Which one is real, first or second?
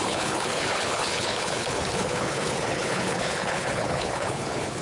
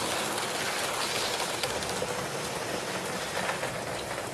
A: second